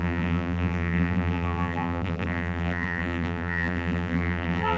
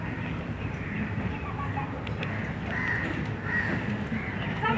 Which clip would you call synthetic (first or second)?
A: first